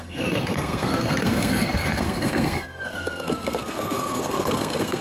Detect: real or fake fake